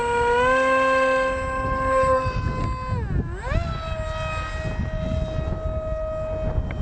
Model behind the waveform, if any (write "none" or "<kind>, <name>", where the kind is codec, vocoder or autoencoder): none